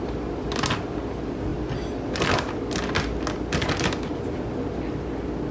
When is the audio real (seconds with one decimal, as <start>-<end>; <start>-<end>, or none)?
0.0-5.5